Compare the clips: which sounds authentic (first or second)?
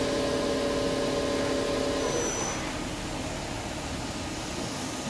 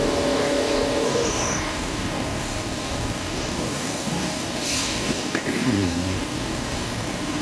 first